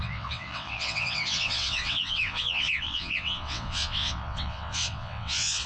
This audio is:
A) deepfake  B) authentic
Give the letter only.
A